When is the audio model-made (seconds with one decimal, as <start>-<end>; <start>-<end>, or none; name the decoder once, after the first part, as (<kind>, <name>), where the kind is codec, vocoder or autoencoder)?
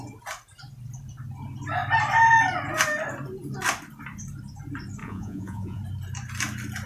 5.0-5.8 (vocoder, Vocos)